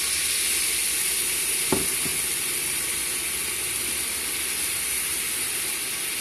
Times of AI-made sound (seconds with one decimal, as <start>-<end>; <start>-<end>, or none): 2.1-3.0